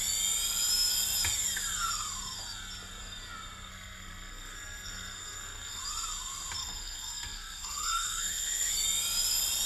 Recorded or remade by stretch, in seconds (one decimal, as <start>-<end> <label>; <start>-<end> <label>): 0.0-3.7 recorded; 3.7-5.8 remade; 5.8-6.6 recorded; 6.6-8.7 remade; 8.7-9.7 recorded